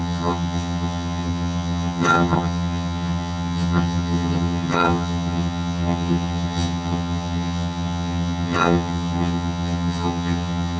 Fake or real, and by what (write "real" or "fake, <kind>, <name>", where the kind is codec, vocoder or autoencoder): fake, vocoder, HiFi-GAN